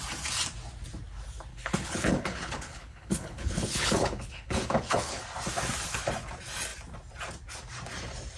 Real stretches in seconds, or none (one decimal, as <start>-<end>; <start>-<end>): 0.0-1.5; 5.2-8.4